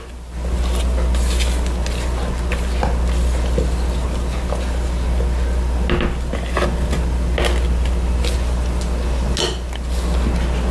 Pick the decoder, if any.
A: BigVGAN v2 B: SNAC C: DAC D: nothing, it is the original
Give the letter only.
D